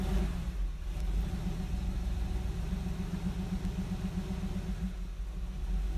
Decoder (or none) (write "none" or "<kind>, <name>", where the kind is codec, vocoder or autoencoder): none